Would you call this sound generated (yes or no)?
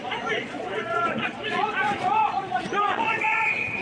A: yes